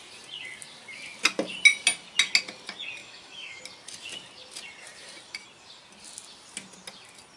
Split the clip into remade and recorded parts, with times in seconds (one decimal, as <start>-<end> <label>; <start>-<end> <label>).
0.0-3.0 recorded; 3.0-3.6 remade; 3.6-7.4 recorded

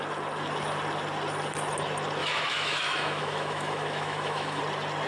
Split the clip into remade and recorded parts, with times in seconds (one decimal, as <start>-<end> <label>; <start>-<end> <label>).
0.0-2.2 recorded; 2.2-4.6 remade; 4.6-5.1 recorded

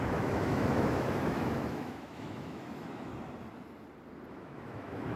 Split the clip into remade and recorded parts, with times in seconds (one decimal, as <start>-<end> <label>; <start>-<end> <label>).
0.0-3.1 remade; 3.1-4.3 recorded; 4.3-5.2 remade